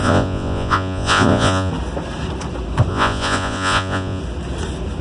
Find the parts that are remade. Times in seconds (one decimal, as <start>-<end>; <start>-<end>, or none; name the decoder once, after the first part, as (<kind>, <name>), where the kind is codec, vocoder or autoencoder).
0.0-1.7 (vocoder, Vocos); 2.9-4.2

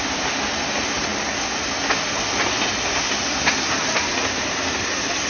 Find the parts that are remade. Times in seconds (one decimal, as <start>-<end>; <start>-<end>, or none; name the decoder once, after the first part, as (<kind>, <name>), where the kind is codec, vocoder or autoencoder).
none

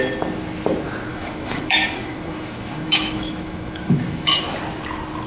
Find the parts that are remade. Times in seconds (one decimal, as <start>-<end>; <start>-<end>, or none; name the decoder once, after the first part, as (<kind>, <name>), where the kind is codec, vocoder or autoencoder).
1.1-4.3 (autoencoder, DAC-VAE)

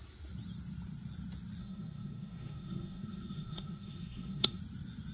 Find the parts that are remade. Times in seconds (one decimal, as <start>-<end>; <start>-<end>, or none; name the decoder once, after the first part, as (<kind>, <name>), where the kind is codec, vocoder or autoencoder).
1.6-4.6 (codec, SNAC)

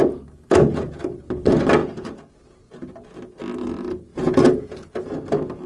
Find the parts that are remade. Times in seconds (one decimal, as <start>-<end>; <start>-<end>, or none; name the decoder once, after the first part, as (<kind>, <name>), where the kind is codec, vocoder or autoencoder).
0.0-1.2 (vocoder, Vocos); 1.8-2.3; 4.1-5.1

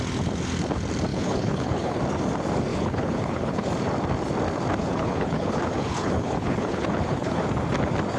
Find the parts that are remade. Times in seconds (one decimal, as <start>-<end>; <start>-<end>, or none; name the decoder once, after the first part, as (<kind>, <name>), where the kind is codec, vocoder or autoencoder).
1.1-2.0 (codec, HILCodec); 2.7-3.7; 4.8-7.4

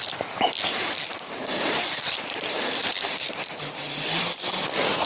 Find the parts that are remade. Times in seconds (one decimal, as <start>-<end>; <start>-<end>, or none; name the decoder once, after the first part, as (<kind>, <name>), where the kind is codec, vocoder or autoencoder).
1.1-3.6 (vocoder, BigVGAN v2)

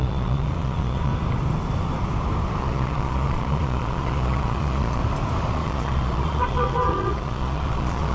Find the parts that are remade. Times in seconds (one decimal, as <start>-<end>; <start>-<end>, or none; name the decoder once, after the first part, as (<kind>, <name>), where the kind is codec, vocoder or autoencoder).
0.0-1.1 (vocoder, Vocos); 2.6-5.0; 5.5-8.1